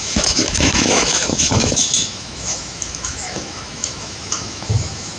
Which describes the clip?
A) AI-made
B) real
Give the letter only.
A